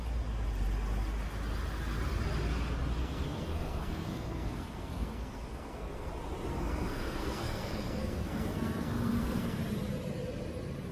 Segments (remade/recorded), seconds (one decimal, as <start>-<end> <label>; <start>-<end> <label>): 0.0-3.0 recorded; 3.0-6.1 remade; 6.1-6.5 recorded; 6.5-9.6 remade; 9.6-10.9 recorded